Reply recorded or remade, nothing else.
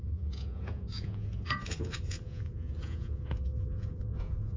remade